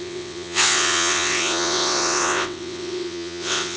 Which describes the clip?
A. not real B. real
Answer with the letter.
A